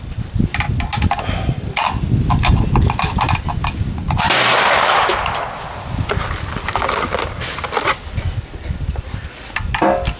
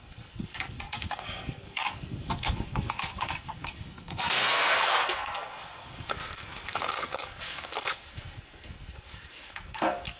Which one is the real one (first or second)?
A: first